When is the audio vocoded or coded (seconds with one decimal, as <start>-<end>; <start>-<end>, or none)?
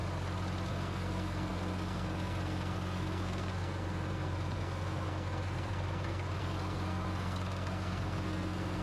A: 0.7-8.8